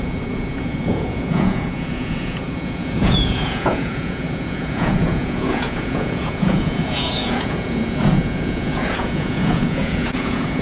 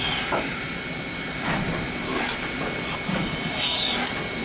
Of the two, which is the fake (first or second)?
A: first